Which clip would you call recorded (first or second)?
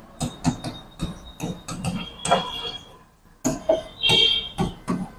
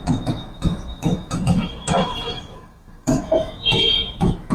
first